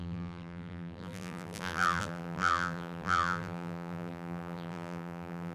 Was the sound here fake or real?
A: fake